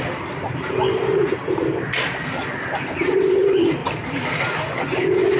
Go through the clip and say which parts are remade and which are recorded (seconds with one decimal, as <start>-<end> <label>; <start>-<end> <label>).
0.0-5.4 recorded